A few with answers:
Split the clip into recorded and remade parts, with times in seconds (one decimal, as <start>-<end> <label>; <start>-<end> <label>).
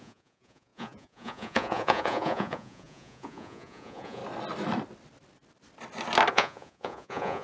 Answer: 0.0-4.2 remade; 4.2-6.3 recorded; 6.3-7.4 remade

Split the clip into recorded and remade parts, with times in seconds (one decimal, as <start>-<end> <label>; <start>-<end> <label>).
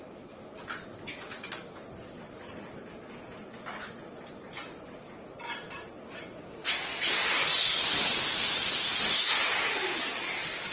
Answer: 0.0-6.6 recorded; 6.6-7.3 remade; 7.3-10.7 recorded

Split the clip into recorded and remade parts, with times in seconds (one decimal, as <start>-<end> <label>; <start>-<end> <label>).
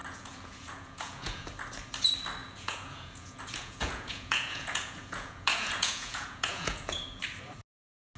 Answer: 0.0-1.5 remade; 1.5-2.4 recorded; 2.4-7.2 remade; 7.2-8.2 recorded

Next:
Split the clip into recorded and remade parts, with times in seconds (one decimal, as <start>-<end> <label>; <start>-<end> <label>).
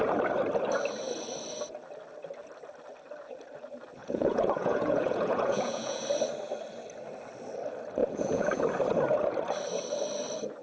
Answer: 0.0-4.0 recorded; 4.0-6.0 remade; 6.0-8.0 recorded; 8.0-8.6 remade; 8.6-10.6 recorded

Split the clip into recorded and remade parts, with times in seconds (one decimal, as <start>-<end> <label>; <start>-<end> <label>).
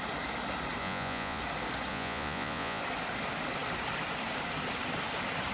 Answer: 0.0-0.8 recorded; 0.8-1.4 remade; 1.4-1.9 recorded; 1.9-2.8 remade; 2.8-5.5 recorded